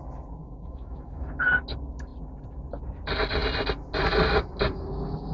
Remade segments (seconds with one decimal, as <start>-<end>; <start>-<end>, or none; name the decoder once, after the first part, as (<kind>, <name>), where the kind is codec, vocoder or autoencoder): 0.4-1.2 (autoencoder, DAC-VAE)